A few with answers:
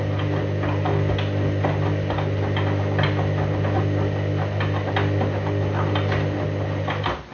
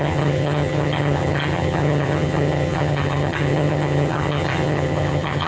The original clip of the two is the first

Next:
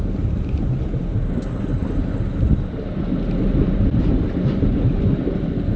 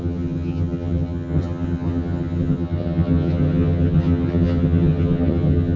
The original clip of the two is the first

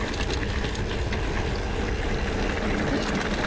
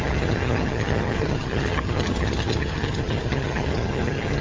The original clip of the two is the first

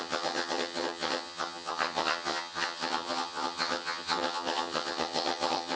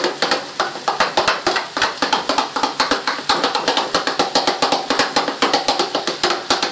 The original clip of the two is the second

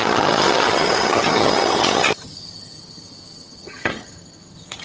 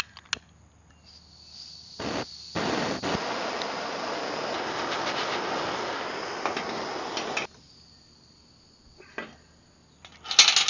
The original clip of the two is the second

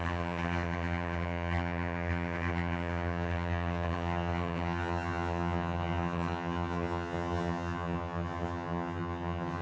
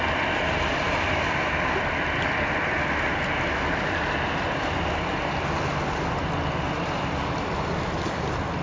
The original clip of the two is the second